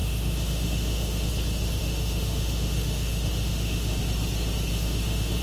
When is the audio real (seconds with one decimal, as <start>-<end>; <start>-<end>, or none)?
1.3-1.8; 4.0-4.7